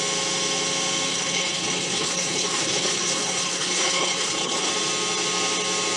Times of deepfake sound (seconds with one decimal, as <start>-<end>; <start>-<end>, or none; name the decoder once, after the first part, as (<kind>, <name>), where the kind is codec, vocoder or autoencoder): 1.1-4.7 (codec, HILCodec)